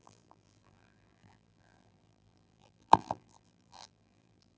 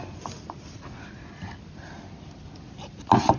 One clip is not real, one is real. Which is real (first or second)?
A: second